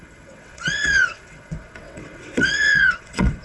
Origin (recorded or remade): remade